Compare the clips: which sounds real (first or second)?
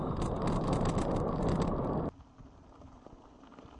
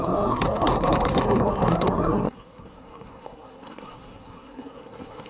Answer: first